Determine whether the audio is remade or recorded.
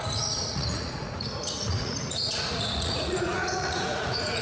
remade